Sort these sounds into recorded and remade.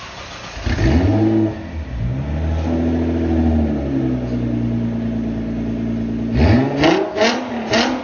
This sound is recorded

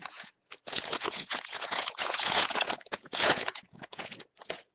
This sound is remade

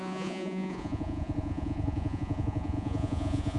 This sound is remade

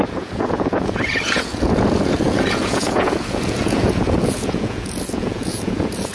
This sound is remade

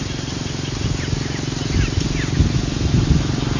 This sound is recorded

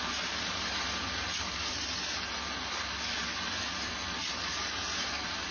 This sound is recorded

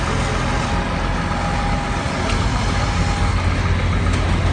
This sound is recorded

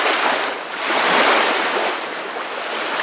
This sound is recorded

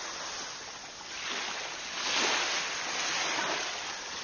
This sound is recorded